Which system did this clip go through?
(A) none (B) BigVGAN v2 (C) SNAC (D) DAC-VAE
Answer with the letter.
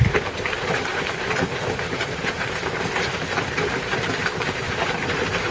B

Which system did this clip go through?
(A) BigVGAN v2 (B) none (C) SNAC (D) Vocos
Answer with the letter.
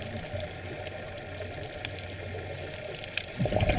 B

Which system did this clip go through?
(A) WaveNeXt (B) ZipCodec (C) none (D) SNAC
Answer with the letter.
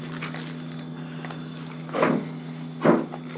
C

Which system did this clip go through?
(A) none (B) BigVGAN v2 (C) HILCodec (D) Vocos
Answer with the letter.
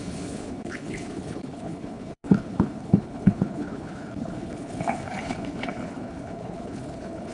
C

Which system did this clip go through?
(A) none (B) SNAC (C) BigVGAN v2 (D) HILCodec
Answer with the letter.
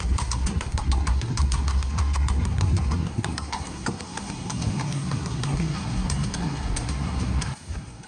B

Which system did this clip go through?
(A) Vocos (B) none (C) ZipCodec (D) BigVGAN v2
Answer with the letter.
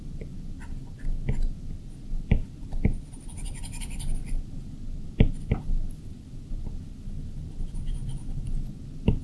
B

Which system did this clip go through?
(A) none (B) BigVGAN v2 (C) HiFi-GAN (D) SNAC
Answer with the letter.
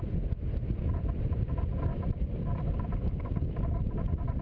B